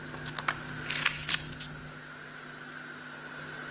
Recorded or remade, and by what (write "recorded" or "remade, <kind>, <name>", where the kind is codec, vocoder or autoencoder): recorded